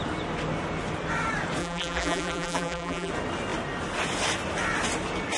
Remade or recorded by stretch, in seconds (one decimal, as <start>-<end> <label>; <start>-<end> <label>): 0.0-1.6 recorded; 1.6-3.1 remade; 3.1-5.4 recorded